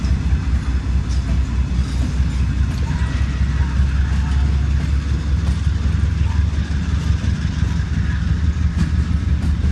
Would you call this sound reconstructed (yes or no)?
no